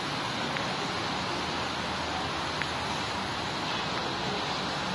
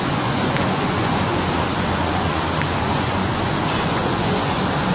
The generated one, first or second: second